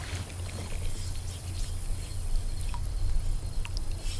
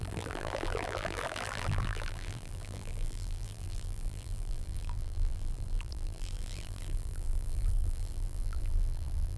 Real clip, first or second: first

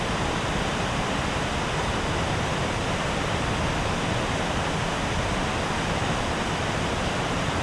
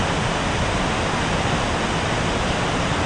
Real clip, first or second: second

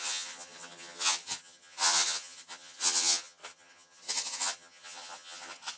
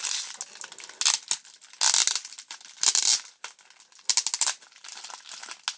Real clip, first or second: second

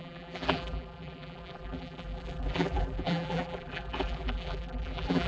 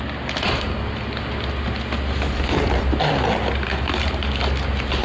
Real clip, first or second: second